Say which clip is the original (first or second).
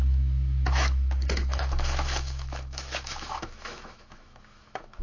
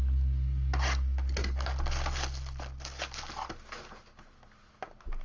second